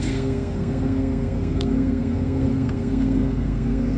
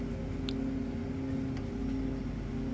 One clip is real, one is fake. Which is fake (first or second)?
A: first